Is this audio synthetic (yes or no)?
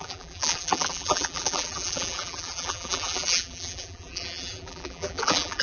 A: yes